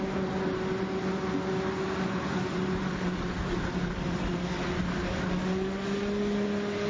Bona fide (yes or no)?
yes